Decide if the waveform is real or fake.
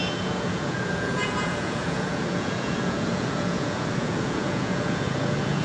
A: fake